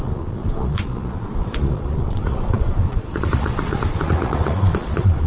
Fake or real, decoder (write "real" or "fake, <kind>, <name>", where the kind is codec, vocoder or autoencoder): fake, vocoder, Vocos